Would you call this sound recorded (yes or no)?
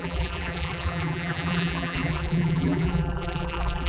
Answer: no